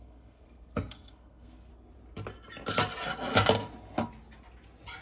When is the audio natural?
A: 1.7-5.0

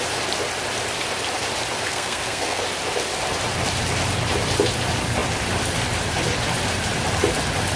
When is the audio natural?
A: 0.0-1.9; 2.6-7.8

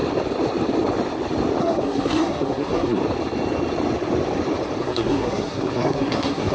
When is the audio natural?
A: 0.0-1.6; 3.0-4.8

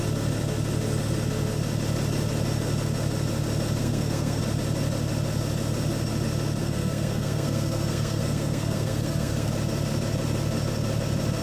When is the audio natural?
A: 0.0-3.8; 4.4-6.6; 9.5-11.4

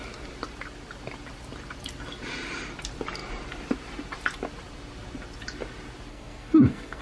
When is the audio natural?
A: 0.0-6.1

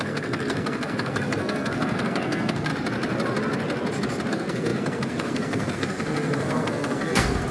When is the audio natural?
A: 2.7-4.3